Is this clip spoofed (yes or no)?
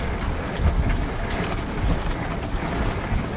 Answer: no